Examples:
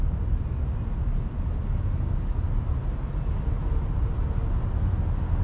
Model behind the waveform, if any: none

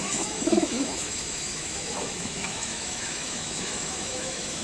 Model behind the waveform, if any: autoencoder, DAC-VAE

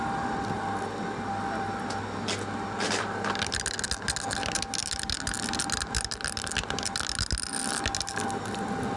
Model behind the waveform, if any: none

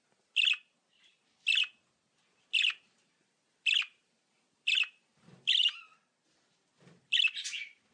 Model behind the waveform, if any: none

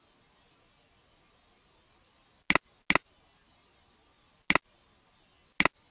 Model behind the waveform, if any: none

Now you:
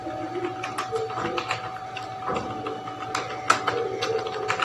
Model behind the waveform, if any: none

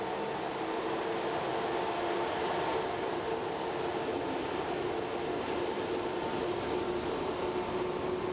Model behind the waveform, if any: none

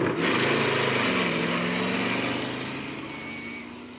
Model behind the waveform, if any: none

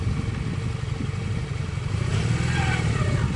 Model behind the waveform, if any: none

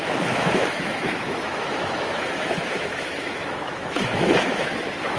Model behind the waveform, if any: autoencoder, DAC-VAE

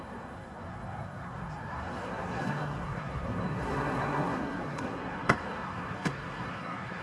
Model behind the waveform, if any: codec, SNAC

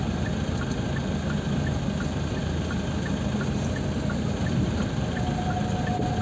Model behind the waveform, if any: none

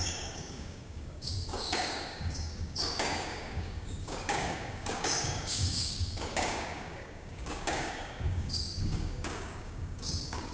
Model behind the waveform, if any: codec, DAC